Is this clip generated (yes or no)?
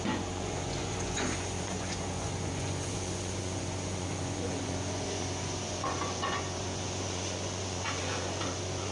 yes